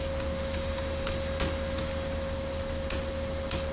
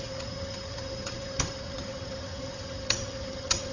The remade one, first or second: second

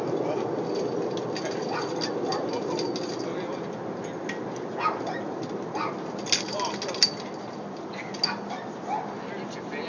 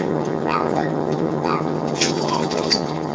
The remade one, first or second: second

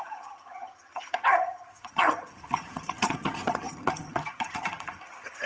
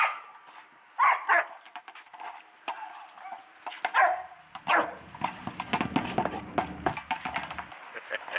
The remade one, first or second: first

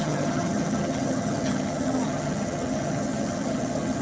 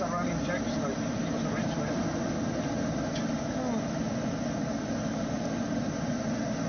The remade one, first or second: first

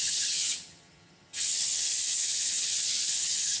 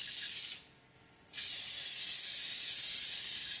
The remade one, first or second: first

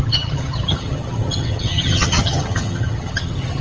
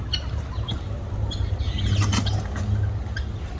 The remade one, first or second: first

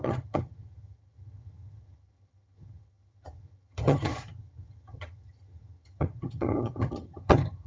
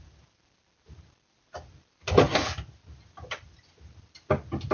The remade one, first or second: first